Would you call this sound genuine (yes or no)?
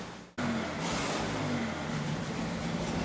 yes